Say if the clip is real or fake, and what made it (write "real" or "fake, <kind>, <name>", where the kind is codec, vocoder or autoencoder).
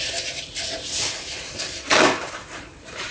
fake, vocoder, BigVGAN v2